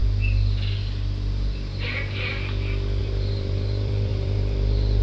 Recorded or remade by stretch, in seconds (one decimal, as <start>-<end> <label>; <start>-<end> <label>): 0.0-3.0 recorded; 3.0-5.0 remade